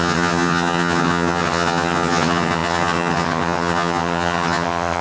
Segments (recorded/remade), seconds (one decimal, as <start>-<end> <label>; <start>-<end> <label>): 0.0-5.0 remade